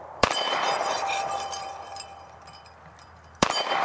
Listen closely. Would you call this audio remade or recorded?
remade